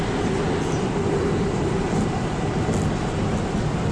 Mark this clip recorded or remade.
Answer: recorded